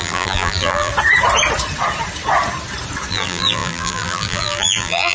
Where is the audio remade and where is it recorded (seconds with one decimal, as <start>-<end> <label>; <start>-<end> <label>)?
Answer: 0.0-0.9 remade; 0.9-3.1 recorded; 3.1-5.1 remade